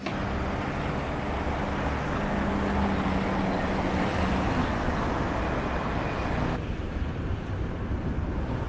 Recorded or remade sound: recorded